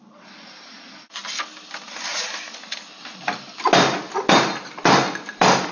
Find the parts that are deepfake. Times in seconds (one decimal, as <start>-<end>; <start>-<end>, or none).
none